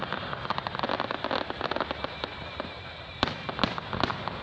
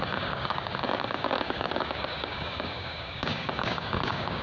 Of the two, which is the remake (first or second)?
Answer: second